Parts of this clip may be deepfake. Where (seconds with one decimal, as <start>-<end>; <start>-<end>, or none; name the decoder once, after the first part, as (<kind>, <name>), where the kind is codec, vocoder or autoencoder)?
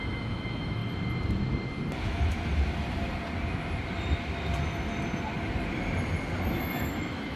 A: 0.0-0.8 (autoencoder, DAC-VAE); 2.1-2.5; 6.6-7.4